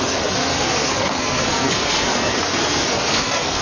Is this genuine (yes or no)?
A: no